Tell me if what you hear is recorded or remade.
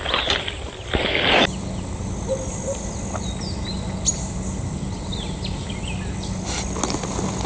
recorded